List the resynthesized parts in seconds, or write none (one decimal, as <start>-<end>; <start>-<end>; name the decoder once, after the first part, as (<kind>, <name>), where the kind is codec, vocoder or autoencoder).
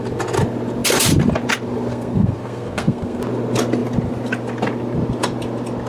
1.9-3.2 (codec, SNAC)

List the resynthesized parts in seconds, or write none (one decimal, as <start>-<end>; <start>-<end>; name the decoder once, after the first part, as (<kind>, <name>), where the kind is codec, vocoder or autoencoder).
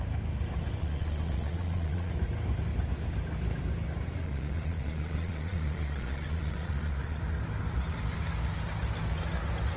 0.8-2.1 (vocoder, Vocos); 4.2-7.2